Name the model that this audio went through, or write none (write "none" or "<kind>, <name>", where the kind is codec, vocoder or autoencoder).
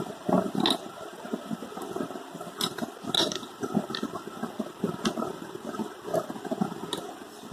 none